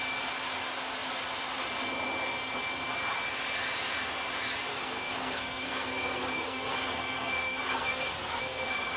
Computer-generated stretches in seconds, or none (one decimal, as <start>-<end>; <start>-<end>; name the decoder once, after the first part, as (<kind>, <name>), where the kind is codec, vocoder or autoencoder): 4.7-9.0 (codec, SNAC)